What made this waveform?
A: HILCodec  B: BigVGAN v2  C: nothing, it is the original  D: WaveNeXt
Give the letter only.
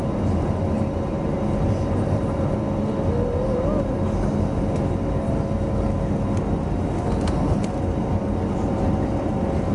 C